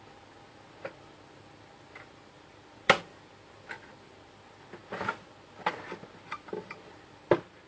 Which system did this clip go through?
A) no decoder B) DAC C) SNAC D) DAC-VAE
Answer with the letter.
A